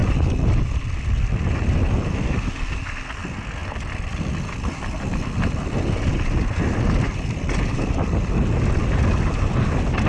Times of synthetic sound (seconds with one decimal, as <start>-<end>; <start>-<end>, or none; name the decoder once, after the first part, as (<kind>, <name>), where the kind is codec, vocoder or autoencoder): none